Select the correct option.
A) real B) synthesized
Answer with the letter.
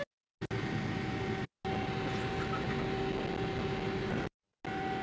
A